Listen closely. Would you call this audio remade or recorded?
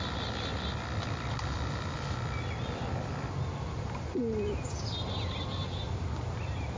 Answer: recorded